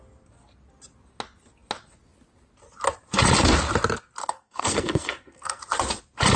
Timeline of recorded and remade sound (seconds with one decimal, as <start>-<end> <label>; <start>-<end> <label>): 0.0-4.2 recorded; 4.2-5.6 remade; 5.6-6.4 recorded